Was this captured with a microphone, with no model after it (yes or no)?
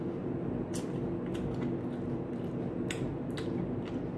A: yes